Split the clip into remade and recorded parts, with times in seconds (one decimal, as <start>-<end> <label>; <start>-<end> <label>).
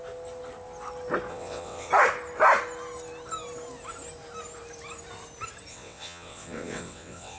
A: 0.0-1.3 recorded; 1.3-1.9 remade; 1.9-5.7 recorded; 5.7-7.4 remade